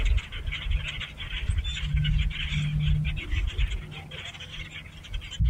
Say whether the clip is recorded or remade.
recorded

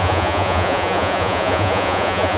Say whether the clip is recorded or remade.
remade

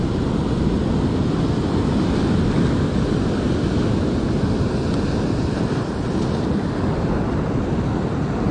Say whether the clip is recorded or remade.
recorded